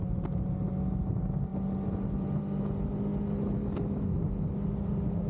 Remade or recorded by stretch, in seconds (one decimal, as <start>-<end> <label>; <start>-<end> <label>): 0.0-5.3 recorded